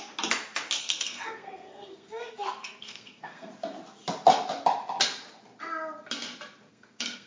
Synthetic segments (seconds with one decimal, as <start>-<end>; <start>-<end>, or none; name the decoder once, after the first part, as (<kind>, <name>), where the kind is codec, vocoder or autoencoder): 0.8-3.5 (codec, SNAC); 6.7-7.3